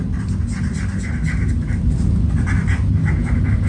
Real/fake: real